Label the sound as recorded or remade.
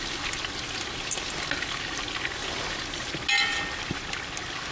recorded